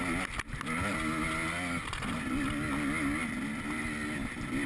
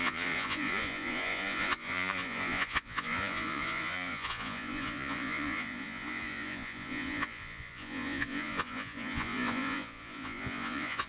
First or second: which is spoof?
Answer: second